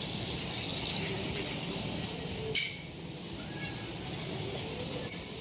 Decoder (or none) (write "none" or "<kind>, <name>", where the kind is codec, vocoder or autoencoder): vocoder, BigVGAN v2